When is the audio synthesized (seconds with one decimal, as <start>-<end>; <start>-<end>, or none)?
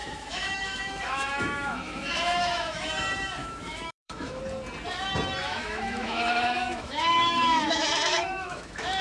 0.0-2.9; 3.4-4.4; 5.4-9.0